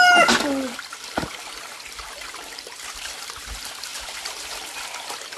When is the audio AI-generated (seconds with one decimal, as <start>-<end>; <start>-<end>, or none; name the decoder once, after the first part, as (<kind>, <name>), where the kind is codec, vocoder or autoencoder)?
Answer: none